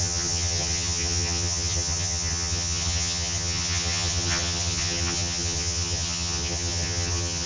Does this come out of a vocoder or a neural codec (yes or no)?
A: yes